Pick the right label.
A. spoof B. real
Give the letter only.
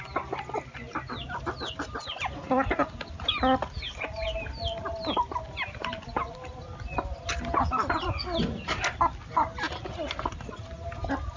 B